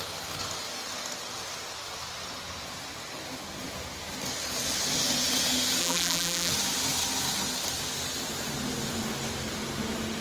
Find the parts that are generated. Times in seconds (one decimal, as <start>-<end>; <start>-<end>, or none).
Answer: 5.8-6.5